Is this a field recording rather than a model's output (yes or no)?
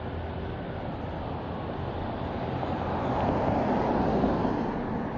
yes